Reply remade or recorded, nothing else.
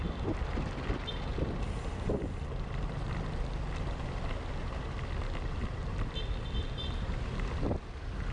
recorded